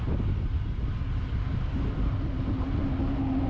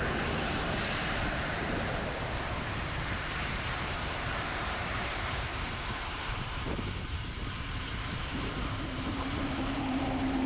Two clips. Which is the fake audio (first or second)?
second